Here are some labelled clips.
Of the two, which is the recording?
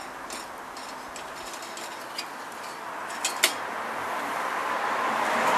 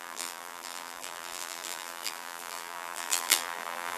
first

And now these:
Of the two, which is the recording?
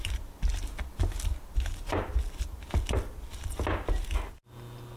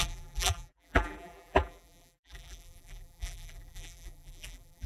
first